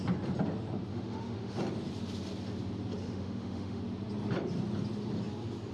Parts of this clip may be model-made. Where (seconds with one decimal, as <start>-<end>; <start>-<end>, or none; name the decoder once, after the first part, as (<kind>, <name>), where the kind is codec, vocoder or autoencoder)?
0.9-1.6 (autoencoder, DAC-VAE); 3.0-3.8